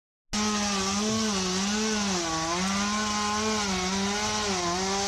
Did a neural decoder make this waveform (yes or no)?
no